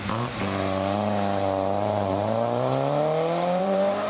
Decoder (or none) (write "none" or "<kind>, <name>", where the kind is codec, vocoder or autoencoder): vocoder, BigVGAN v2